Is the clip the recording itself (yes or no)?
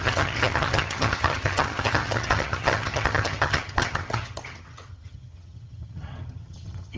no